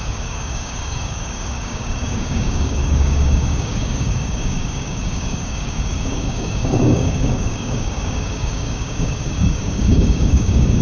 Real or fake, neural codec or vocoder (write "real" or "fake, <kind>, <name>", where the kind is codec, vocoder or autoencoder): fake, codec, DAC